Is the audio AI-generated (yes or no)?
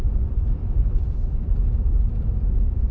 yes